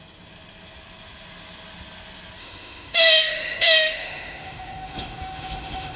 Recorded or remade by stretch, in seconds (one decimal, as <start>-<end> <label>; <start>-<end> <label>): 0.0-2.4 recorded; 2.4-6.0 remade